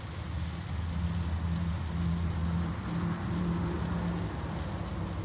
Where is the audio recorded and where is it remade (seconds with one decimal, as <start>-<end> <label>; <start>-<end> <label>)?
0.0-5.2 recorded